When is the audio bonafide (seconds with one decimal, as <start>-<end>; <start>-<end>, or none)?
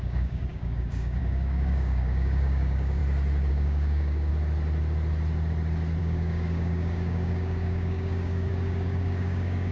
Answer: 3.0-3.5; 4.3-6.0